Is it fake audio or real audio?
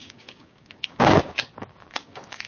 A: fake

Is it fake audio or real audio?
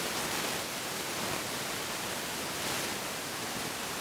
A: real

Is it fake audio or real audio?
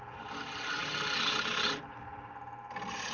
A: real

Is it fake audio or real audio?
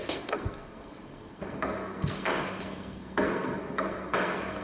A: fake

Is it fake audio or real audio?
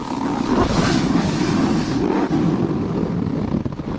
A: real